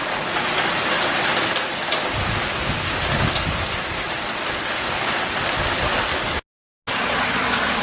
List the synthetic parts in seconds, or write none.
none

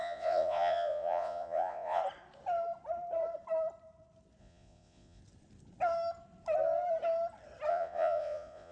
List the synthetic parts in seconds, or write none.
0.0-2.0 (vocoder, Vocos); 4.4-5.2; 7.7-8.7